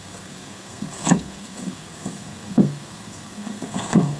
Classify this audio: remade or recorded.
remade